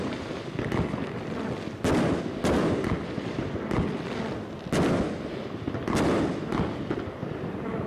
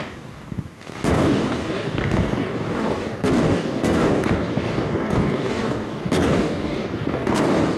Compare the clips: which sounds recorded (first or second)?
first